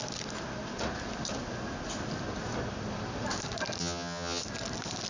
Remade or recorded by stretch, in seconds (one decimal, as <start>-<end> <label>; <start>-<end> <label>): 0.0-3.8 recorded; 3.8-4.4 remade; 4.4-5.1 recorded